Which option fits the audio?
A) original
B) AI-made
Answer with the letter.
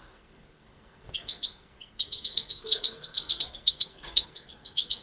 B